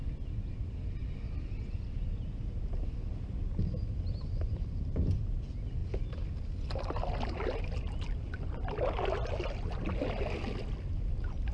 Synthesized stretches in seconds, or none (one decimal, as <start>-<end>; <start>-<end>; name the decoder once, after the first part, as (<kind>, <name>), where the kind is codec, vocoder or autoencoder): none